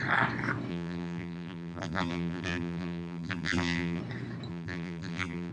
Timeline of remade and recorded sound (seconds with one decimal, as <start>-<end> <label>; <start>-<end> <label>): 0.0-0.7 recorded; 0.7-4.0 remade; 4.0-4.5 recorded; 4.5-5.5 remade